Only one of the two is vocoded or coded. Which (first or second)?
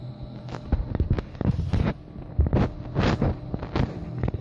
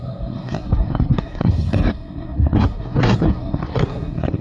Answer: second